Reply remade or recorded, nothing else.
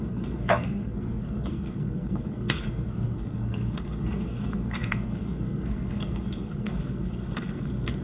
remade